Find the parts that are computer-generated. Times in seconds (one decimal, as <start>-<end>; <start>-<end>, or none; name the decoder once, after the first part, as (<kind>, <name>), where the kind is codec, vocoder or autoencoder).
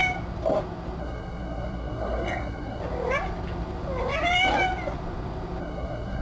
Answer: 1.0-2.8 (codec, SNAC); 5.6-6.2